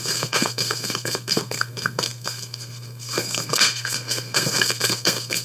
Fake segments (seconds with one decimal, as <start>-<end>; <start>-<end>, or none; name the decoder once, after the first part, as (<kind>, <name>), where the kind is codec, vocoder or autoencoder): 0.0-5.4 (codec, SNAC)